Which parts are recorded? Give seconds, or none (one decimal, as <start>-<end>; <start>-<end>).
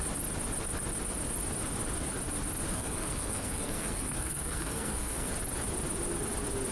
0.0-2.7; 5.3-6.7